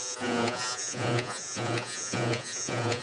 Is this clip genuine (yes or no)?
no